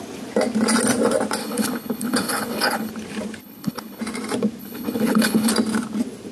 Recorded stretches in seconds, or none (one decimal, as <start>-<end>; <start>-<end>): 0.0-1.4; 2.9-3.4; 4.0-4.6; 5.5-6.3